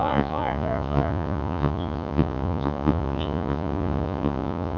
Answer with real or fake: fake